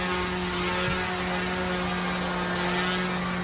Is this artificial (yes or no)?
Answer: no